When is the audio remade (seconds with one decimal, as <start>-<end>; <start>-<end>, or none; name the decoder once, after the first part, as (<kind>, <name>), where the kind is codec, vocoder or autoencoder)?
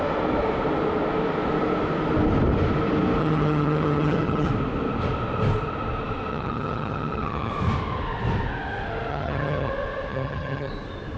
3.2-4.5 (vocoder, HiFi-GAN); 6.3-7.5; 9.1-9.7; 10.1-10.7